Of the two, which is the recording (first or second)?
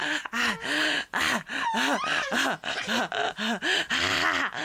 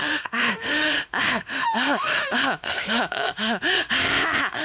first